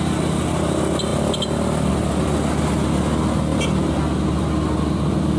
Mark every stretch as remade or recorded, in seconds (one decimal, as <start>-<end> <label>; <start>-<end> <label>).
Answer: 0.0-5.4 recorded